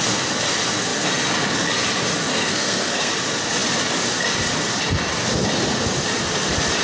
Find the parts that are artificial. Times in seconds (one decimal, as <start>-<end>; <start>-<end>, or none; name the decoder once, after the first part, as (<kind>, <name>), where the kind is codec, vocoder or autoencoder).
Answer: 2.3-3.1 (codec, SNAC)